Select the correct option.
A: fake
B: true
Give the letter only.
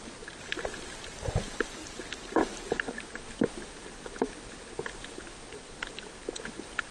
B